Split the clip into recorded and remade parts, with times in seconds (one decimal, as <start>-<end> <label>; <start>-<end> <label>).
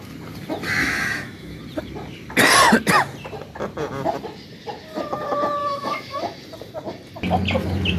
0.0-0.8 recorded; 0.8-1.6 remade; 1.6-5.6 recorded; 5.6-6.2 remade; 6.2-8.0 recorded